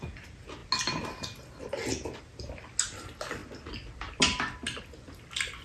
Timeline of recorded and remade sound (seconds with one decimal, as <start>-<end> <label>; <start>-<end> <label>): 0.0-5.6 recorded